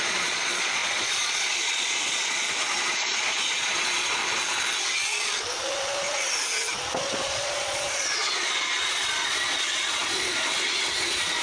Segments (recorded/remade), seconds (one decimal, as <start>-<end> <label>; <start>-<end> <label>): 0.0-4.2 remade; 4.2-7.1 recorded; 7.1-11.4 remade